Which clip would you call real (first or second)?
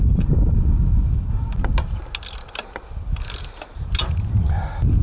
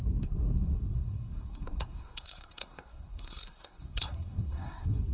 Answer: first